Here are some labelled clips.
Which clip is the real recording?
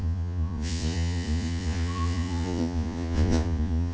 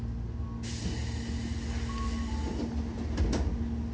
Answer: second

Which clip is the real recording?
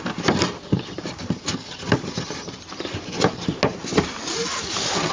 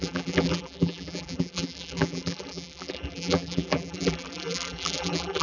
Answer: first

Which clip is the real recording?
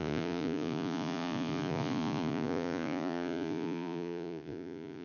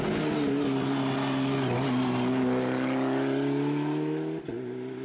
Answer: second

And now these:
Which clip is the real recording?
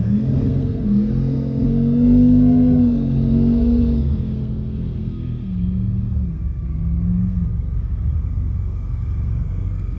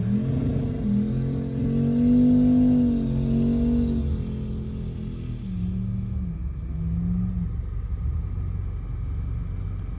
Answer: second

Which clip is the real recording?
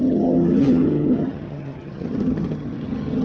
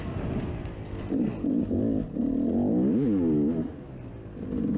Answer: second